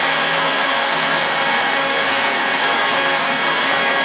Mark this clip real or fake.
fake